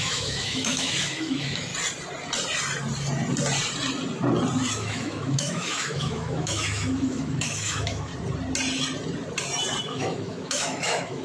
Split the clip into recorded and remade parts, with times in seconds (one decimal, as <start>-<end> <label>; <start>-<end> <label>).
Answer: 0.0-1.7 remade; 1.7-4.7 recorded; 4.7-8.1 remade; 8.1-9.8 recorded; 9.8-11.2 remade